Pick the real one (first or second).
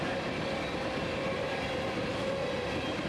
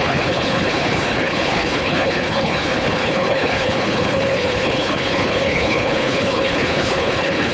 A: first